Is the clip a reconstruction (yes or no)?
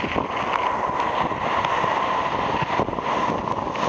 no